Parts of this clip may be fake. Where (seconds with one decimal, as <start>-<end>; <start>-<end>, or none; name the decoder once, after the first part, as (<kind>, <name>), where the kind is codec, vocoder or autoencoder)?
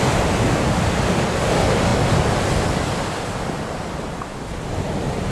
none